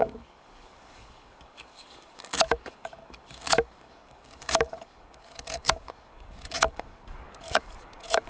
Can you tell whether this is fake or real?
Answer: fake